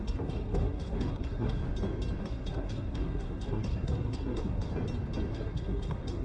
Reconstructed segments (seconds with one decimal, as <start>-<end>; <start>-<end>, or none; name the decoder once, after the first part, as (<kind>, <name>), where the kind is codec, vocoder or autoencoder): 0.0-1.6 (codec, SNAC); 2.2-4.7; 5.3-6.2